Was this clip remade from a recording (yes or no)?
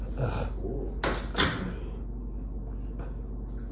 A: no